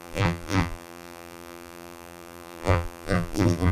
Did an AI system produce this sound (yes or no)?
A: yes